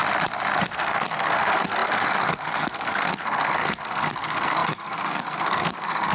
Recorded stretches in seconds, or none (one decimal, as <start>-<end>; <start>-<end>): 0.0-0.6